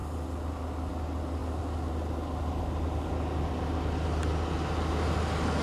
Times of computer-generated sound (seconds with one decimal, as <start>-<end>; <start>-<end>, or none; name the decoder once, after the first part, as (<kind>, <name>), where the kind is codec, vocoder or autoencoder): none